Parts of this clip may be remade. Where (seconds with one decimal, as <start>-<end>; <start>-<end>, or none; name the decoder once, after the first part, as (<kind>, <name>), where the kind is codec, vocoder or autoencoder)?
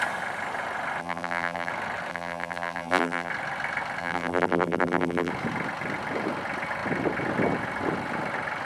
1.0-1.7 (vocoder, BigVGAN v2); 2.1-3.3; 4.0-5.3